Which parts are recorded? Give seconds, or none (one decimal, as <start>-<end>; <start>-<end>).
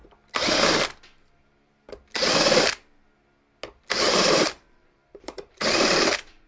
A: 0.0-3.9